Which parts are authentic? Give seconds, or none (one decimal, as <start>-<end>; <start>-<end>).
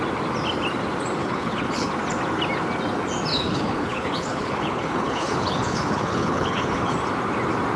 0.0-1.2; 1.9-3.3; 6.9-7.8